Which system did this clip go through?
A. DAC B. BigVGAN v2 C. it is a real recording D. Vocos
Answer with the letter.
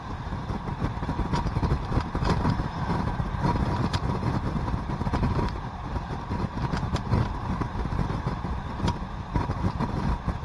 B